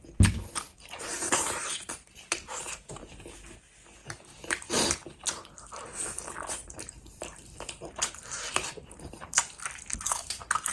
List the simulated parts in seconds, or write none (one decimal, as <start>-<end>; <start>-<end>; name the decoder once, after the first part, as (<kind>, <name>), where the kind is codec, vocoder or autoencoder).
1.1-3.1 (vocoder, BigVGAN v2); 4.0-4.7; 6.6-8.1; 8.5-9.4